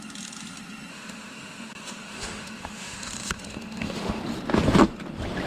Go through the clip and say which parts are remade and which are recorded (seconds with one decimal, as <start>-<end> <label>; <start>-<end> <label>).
0.0-0.9 recorded; 0.9-4.2 remade; 4.2-5.5 recorded